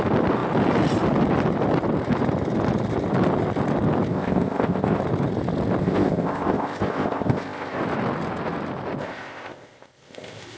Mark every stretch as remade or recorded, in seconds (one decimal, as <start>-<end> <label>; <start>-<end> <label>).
0.0-4.1 recorded; 4.1-5.0 remade; 5.0-5.8 recorded; 5.8-7.8 remade; 7.8-9.0 recorded; 9.0-10.6 remade